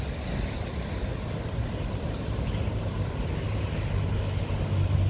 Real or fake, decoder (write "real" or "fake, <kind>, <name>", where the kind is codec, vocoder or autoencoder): real